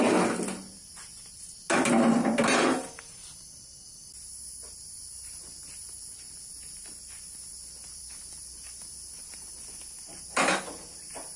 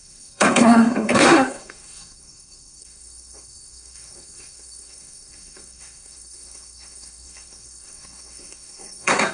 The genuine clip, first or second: first